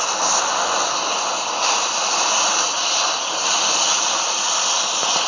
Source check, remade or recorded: recorded